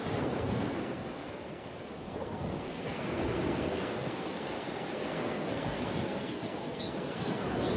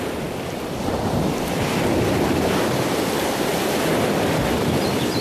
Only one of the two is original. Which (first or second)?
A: second